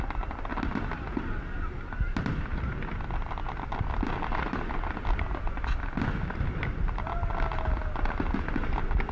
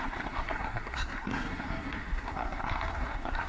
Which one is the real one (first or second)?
first